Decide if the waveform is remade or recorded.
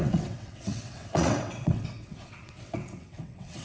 remade